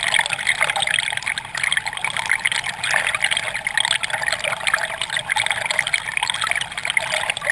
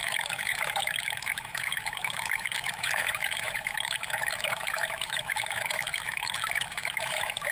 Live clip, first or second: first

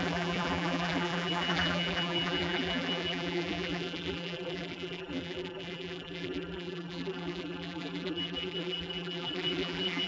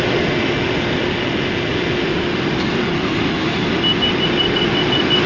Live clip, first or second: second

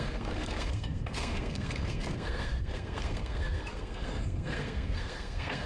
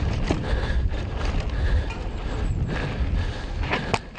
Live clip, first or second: second